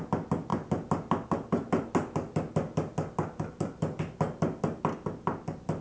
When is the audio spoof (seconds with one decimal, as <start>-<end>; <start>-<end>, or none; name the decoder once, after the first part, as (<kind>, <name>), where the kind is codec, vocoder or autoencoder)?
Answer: none

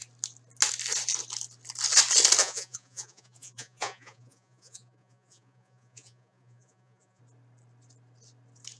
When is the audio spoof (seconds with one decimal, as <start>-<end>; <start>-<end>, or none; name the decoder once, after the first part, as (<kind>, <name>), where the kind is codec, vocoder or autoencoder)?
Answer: 2.4-7.2 (vocoder, Vocos)

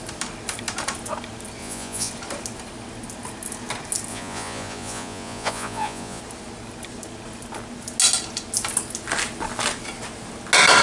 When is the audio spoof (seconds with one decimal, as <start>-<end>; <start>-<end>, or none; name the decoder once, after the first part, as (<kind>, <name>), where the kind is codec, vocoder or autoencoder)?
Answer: 1.6-2.1 (vocoder, Vocos); 4.1-6.2

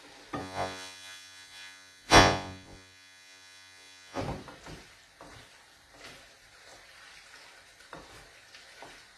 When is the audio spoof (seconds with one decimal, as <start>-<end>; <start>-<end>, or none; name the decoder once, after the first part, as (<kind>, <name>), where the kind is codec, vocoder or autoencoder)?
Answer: 0.4-4.2 (vocoder, Vocos)

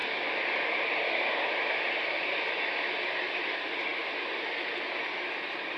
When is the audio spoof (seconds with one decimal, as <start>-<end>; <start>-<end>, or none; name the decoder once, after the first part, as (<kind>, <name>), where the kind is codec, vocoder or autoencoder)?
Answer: none